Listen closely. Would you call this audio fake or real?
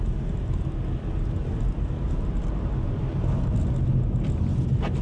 real